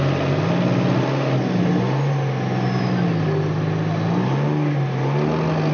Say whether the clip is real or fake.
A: real